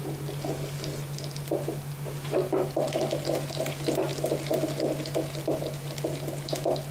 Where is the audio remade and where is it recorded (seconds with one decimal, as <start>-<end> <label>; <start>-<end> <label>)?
0.0-6.9 recorded